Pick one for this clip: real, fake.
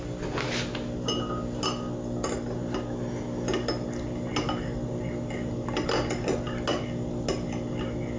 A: real